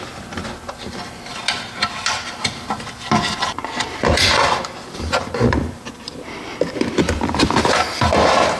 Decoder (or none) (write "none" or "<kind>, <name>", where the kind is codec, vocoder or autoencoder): vocoder, BigVGAN v2